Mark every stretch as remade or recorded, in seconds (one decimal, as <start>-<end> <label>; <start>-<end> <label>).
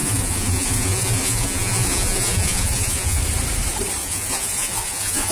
0.0-3.2 remade; 3.2-4.0 recorded; 4.0-5.3 remade